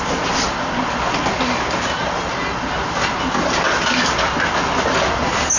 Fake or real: real